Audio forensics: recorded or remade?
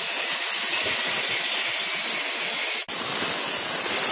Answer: recorded